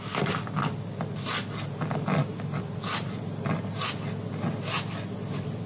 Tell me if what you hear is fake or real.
real